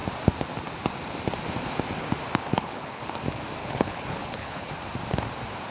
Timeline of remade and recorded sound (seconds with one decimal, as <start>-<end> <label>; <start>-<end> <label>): 0.0-2.5 recorded; 2.5-3.0 remade; 3.0-3.6 recorded; 3.6-4.7 remade; 4.7-5.7 recorded